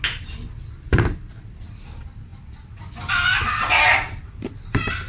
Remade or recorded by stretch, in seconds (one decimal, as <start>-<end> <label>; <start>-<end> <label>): 0.0-5.1 recorded